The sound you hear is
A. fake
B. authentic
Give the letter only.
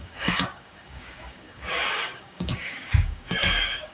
A